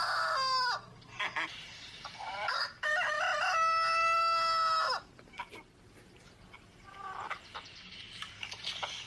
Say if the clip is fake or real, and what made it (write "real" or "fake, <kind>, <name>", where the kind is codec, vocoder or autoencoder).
real